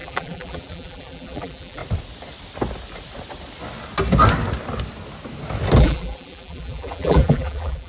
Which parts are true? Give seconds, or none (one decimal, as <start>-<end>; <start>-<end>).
1.8-5.8